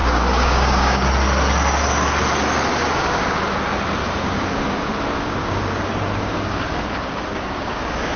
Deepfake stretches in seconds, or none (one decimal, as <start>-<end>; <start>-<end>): 0.0-1.1; 2.7-3.5; 4.0-8.2